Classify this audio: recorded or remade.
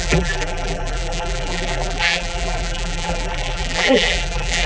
remade